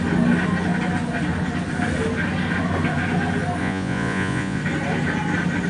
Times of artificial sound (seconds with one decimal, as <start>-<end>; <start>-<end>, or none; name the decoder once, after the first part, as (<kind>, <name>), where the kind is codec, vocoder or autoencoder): 3.6-4.6 (vocoder, Vocos)